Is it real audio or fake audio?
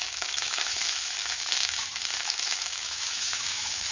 fake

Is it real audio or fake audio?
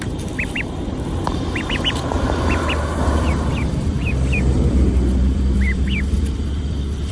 fake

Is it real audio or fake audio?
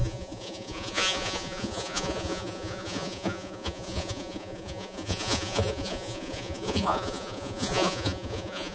fake